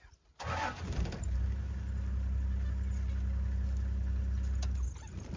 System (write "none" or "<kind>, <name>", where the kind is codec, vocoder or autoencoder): none